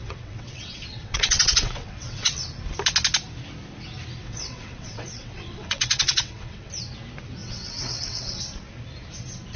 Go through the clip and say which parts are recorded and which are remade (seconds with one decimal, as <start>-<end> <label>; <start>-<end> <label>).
0.0-2.4 remade; 2.4-4.2 recorded; 4.2-6.7 remade; 6.7-7.4 recorded; 7.4-8.4 remade; 8.4-9.6 recorded